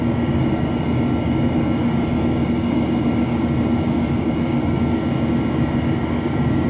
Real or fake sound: fake